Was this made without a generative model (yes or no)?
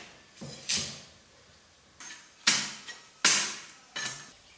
yes